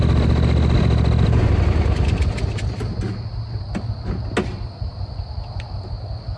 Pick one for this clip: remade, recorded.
recorded